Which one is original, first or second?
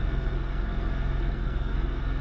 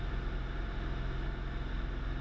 second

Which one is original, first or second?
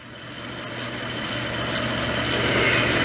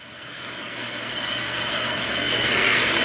first